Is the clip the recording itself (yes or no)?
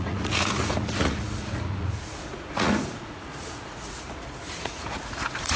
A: no